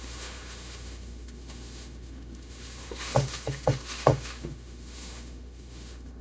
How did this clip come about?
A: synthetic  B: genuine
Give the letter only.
A